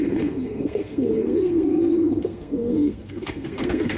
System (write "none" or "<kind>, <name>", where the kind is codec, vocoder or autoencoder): codec, SNAC